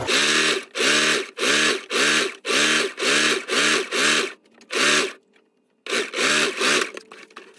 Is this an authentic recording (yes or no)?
yes